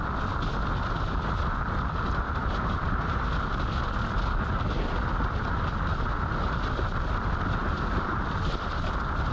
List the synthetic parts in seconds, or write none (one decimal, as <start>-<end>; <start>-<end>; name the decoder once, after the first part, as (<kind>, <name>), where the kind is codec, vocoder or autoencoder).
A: 2.4-3.2 (vocoder, BigVGAN v2); 7.6-8.2